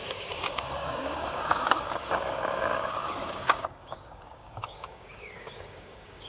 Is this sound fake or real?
fake